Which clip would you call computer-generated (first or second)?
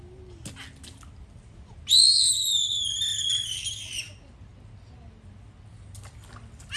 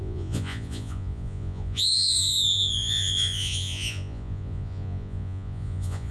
second